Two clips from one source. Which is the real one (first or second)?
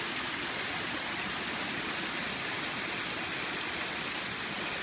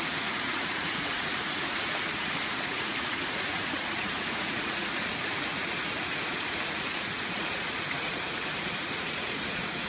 first